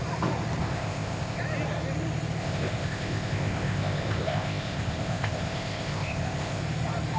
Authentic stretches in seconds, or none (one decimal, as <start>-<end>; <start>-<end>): 0.0-0.6; 1.4-2.4; 6.6-7.2